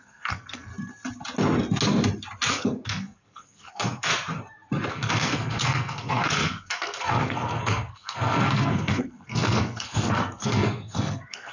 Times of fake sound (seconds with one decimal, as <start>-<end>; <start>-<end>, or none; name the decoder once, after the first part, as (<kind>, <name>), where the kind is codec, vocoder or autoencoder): 0.0-0.7 (codec, SNAC); 2.5-4.1; 4.9-11.5